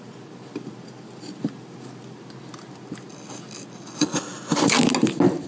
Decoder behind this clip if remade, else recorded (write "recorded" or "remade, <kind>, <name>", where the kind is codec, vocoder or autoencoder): recorded